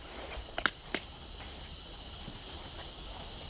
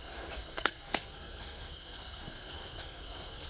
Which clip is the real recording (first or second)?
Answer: first